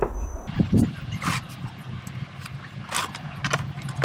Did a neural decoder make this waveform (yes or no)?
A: no